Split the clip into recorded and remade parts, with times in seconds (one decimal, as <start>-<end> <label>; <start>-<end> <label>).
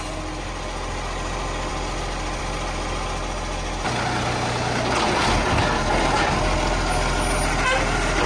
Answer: 0.0-8.3 recorded